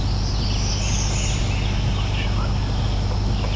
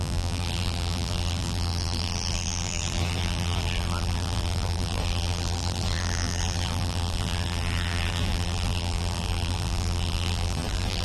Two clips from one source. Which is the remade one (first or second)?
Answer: second